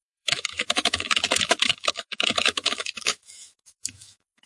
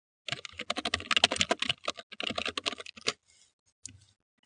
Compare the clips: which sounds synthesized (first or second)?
first